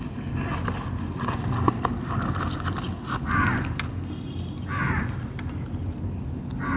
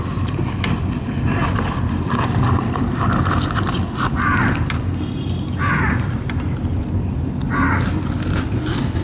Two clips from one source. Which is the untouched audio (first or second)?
first